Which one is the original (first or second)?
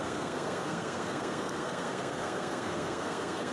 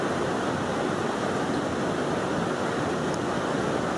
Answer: second